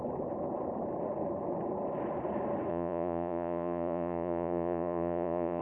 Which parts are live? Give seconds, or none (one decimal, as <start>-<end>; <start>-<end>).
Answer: 0.0-2.7